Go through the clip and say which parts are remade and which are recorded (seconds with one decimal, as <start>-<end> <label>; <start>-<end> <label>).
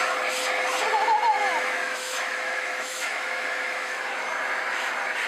0.0-1.3 recorded; 1.3-4.0 remade; 4.0-5.3 recorded